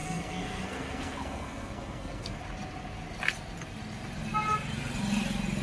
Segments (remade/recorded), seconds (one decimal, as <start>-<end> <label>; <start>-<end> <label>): 0.0-2.4 remade; 2.4-5.6 recorded